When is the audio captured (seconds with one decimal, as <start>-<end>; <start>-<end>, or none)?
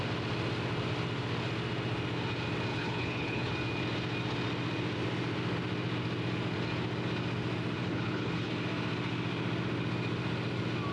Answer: 0.0-2.7; 3.5-7.8; 8.5-10.9